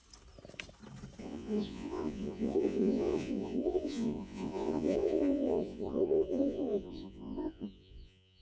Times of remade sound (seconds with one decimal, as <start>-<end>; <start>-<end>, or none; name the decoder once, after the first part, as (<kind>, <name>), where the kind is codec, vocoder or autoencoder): 1.2-8.4 (vocoder, Vocos)